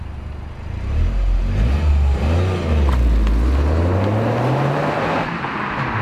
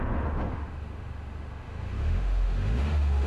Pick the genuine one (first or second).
first